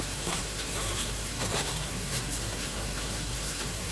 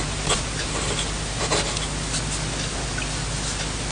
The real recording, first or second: second